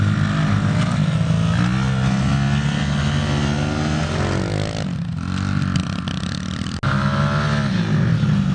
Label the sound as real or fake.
real